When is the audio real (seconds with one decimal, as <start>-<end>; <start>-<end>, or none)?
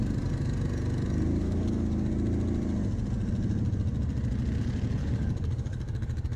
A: 0.0-1.4; 2.1-5.0